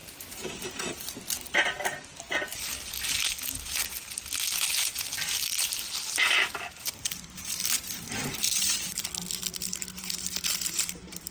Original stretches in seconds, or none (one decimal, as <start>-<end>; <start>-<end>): 0.8-11.3